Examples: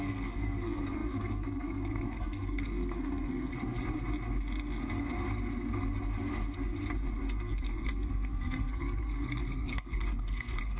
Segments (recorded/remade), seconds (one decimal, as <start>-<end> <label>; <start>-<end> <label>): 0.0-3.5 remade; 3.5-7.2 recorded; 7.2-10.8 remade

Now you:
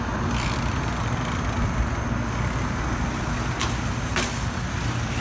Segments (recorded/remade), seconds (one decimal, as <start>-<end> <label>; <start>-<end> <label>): 0.0-5.2 recorded

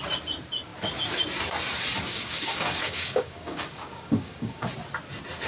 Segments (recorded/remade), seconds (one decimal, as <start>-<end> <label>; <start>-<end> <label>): 0.0-2.1 recorded; 2.1-4.7 remade; 4.7-5.5 recorded

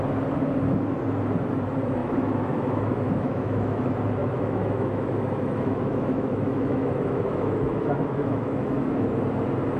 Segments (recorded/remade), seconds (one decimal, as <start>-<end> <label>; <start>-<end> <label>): 0.0-2.0 recorded; 2.0-3.8 remade; 3.8-4.2 recorded; 4.2-9.1 remade; 9.1-9.8 recorded

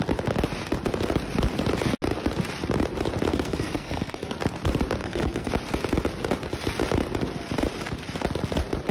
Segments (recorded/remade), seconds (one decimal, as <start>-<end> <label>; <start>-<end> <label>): 0.0-3.3 recorded; 3.3-4.3 remade; 4.3-5.0 recorded; 5.0-5.5 remade; 5.5-8.9 recorded

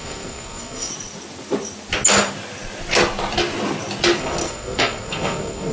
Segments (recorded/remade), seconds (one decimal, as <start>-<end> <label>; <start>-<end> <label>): 0.0-0.9 remade; 0.9-4.2 recorded; 4.2-5.7 remade

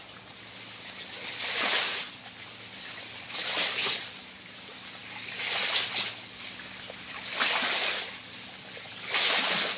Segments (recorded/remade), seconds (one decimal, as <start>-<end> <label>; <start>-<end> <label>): 0.0-9.8 recorded